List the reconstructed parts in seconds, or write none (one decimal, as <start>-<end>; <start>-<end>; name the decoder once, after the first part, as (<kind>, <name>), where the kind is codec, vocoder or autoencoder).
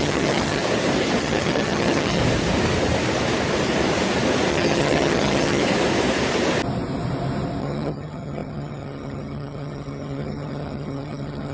0.0-0.6 (vocoder, HiFi-GAN); 1.2-2.2; 4.5-5.6; 7.6-11.5